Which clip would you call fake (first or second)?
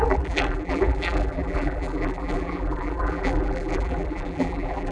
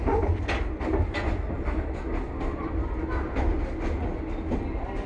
first